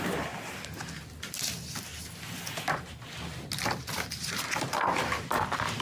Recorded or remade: recorded